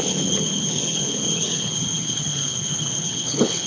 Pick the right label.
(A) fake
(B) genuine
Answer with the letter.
A